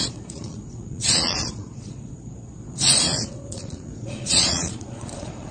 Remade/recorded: remade